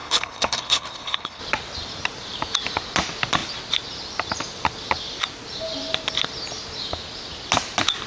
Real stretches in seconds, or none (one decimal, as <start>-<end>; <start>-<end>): 1.4-8.1